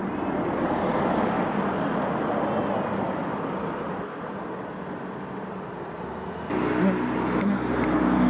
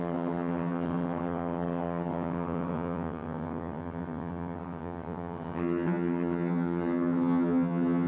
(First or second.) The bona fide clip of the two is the first